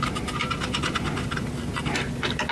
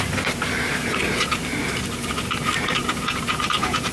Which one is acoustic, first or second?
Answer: first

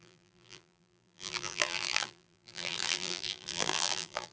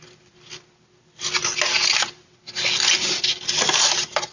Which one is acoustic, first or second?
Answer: second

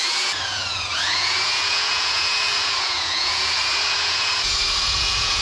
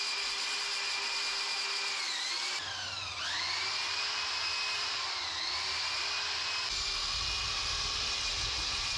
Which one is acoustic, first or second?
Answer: second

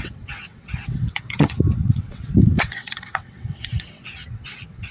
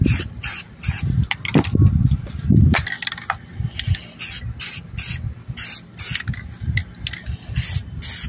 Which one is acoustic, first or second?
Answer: second